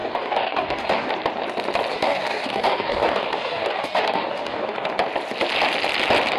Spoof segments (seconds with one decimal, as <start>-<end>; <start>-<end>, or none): 0.0-1.1; 1.9-4.9